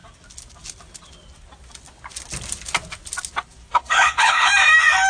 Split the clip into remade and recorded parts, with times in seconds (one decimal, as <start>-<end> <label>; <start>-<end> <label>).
0.0-3.7 recorded; 3.7-4.5 remade; 4.5-5.1 recorded